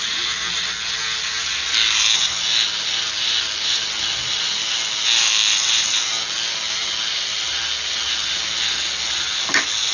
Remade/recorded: recorded